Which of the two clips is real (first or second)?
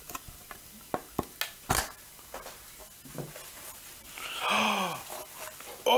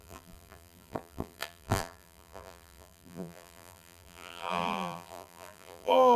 first